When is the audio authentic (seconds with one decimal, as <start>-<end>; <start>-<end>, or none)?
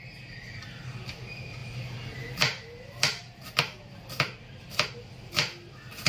0.0-6.1